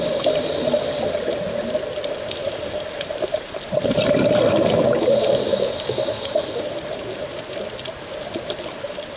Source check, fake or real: real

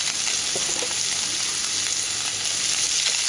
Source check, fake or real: real